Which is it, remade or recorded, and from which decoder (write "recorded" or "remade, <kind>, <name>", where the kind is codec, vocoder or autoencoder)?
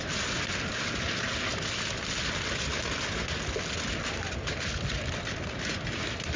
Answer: recorded